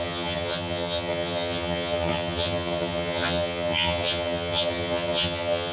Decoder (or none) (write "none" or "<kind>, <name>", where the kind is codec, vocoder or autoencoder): vocoder, HiFi-GAN